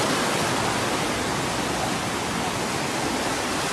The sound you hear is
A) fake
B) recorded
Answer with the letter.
B